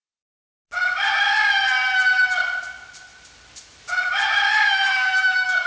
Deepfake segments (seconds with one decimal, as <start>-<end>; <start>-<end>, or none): 4.5-5.7